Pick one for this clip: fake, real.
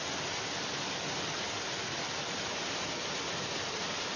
real